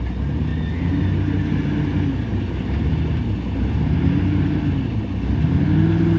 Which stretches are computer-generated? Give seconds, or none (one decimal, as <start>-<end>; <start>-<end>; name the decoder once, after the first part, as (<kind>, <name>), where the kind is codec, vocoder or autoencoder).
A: none